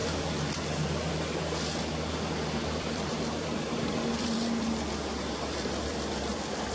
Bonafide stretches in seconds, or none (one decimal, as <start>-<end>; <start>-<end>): 0.0-2.1